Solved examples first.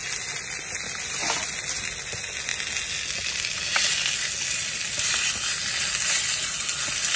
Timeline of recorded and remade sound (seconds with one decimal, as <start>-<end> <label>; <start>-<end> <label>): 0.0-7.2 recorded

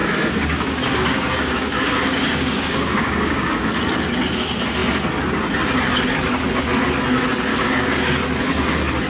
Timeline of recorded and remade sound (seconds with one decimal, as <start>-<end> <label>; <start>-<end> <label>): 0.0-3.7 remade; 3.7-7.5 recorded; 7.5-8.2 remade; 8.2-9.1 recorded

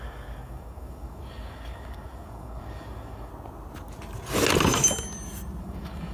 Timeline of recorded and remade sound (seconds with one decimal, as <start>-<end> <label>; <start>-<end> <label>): 0.0-3.3 remade; 3.3-5.6 recorded; 5.6-6.1 remade